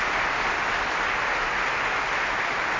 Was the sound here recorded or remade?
recorded